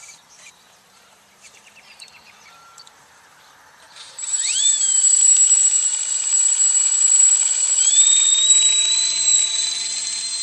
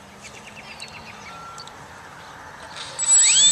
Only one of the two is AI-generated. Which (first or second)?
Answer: first